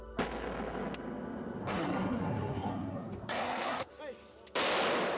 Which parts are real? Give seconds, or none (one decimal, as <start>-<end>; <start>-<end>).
0.0-1.6; 3.9-5.2